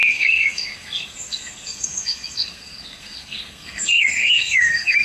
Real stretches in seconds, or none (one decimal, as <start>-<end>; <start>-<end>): none